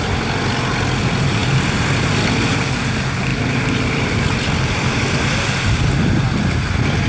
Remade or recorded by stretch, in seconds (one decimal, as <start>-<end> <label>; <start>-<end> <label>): 0.0-1.4 recorded; 1.4-2.6 remade; 2.6-3.3 recorded; 3.3-4.2 remade; 4.2-7.1 recorded